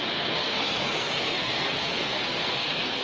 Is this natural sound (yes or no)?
no